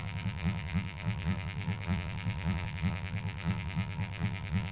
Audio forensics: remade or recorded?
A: remade